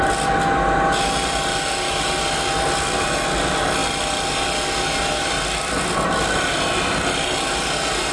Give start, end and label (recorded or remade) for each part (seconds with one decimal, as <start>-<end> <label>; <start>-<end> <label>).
0.0-8.1 recorded